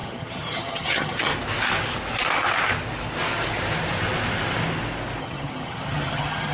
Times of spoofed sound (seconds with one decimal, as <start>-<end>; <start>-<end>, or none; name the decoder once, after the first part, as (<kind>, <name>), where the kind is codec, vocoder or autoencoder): 0.0-1.3 (vocoder, HiFi-GAN); 5.2-6.5

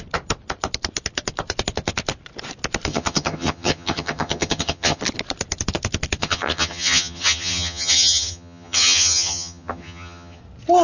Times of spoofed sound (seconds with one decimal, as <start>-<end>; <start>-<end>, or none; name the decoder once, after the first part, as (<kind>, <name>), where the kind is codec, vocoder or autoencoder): 2.9-5.0 (vocoder, HiFi-GAN); 6.2-10.4

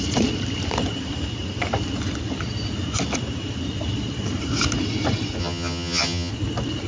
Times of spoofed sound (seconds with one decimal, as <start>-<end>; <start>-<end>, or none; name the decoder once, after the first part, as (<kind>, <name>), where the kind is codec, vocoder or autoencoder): 5.4-6.3 (vocoder, HiFi-GAN)

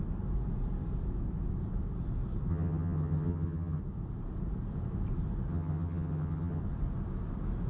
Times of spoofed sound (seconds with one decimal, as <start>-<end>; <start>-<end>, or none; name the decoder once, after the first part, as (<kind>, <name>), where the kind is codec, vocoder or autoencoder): 2.5-3.8 (vocoder, HiFi-GAN); 5.5-6.6

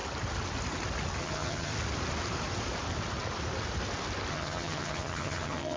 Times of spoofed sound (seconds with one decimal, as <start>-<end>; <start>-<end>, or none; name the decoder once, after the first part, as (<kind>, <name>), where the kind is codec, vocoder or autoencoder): 1.2-1.7 (vocoder, HiFi-GAN); 4.3-5.8

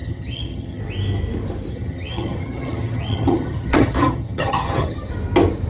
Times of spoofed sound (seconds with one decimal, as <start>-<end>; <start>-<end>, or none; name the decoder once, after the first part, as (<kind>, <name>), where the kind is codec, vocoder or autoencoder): 0.0-0.8 (vocoder, HiFi-GAN); 1.7-5.1

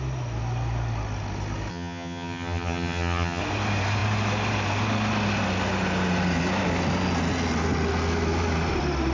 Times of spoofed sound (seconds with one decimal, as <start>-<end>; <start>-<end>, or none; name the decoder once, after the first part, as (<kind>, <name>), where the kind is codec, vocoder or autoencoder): 1.7-3.4 (vocoder, HiFi-GAN)

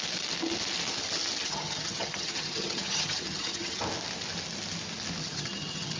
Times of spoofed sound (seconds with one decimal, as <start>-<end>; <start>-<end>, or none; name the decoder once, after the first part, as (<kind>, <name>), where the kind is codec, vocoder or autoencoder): 1.4-3.8 (vocoder, HiFi-GAN); 5.2-6.0